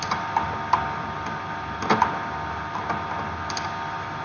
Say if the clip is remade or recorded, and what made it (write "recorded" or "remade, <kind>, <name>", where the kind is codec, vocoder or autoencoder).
recorded